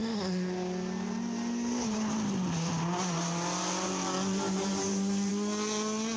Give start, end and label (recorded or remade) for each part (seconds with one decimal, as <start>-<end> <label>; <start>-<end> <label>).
0.0-3.6 recorded; 3.6-5.3 remade; 5.3-6.2 recorded